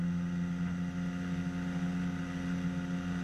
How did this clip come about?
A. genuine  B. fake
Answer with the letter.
A